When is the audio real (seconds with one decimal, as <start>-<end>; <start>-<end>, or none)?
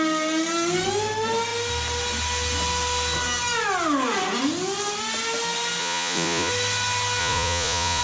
0.0-5.8; 6.5-7.2